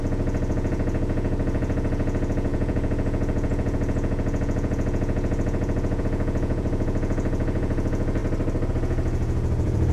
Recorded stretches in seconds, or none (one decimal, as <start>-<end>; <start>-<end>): 8.2-8.7

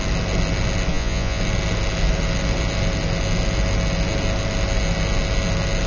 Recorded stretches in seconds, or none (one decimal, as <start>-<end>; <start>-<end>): 0.0-0.9; 1.4-5.9

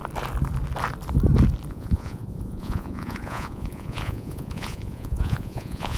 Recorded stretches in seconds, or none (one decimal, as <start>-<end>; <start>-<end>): 0.0-1.7

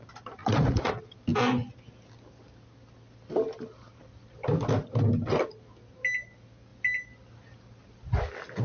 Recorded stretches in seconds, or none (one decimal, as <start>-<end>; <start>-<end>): 0.0-0.4; 0.9-8.6